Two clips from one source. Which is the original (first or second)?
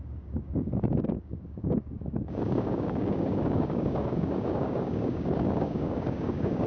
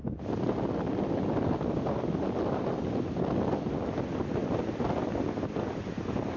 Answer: second